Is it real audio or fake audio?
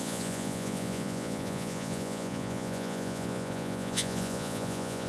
fake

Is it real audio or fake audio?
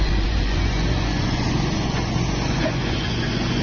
fake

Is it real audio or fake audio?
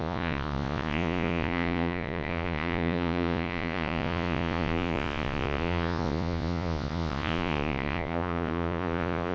fake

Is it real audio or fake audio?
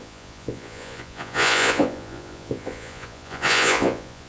fake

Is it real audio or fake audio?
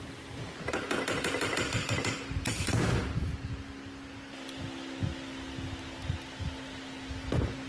real